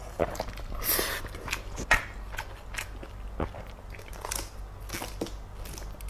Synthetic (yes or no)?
no